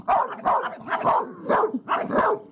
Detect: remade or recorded recorded